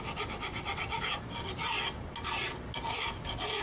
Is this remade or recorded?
recorded